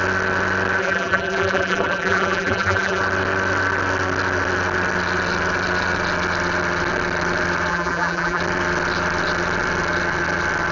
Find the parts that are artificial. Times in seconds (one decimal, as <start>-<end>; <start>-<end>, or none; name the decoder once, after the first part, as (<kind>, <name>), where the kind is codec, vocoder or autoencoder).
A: 0.8-3.0 (vocoder, BigVGAN v2); 7.7-8.4